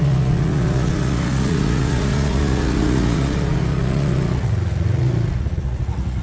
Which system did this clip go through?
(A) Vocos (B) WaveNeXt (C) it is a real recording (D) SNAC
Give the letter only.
A